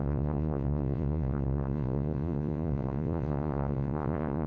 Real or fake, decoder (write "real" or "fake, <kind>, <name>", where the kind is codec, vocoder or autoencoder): fake, vocoder, Vocos